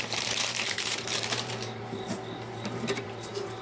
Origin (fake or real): fake